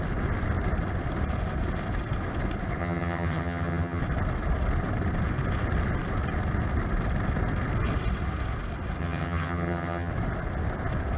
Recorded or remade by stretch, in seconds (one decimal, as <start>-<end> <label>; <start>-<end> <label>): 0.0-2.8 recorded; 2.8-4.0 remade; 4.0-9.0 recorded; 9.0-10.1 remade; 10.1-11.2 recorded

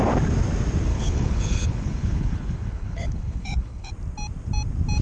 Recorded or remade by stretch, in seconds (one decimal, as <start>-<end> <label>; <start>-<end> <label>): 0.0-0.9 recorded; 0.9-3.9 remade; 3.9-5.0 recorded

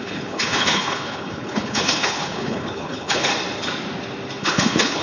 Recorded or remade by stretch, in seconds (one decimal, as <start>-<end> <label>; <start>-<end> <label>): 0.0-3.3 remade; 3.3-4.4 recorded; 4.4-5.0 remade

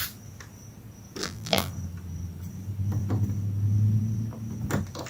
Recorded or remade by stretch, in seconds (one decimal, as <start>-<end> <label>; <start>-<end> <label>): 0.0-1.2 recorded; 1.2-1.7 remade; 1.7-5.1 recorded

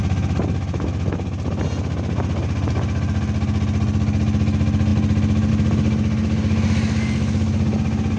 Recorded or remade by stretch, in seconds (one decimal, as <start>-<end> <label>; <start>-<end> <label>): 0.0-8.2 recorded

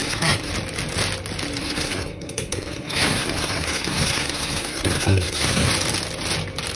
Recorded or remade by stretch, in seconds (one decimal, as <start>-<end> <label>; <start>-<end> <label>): 0.0-0.5 remade; 0.5-1.6 recorded; 1.6-5.7 remade; 5.7-6.8 recorded

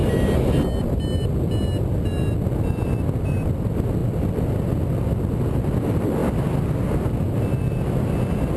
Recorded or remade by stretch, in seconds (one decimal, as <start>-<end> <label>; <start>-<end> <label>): 0.0-8.6 recorded

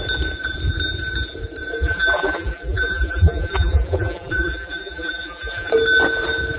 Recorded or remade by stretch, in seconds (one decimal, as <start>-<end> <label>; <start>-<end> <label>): 0.0-1.7 recorded; 1.7-5.7 remade; 5.7-6.6 recorded